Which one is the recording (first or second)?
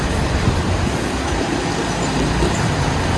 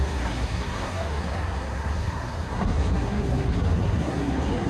first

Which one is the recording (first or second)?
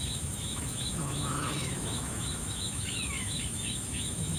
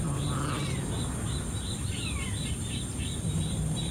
second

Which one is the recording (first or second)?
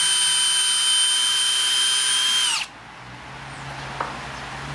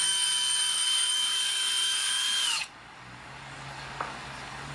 first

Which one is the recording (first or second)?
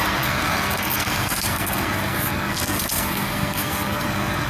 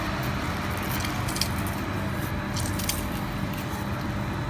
second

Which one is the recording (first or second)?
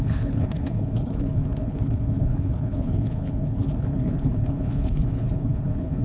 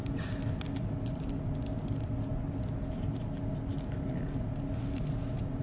second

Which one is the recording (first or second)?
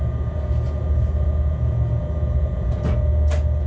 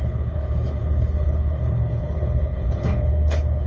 first